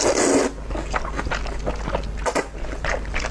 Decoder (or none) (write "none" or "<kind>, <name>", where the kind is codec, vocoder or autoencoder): none